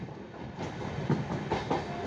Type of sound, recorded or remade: recorded